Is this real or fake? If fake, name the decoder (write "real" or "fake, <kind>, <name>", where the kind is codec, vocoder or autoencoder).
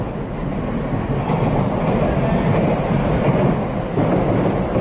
real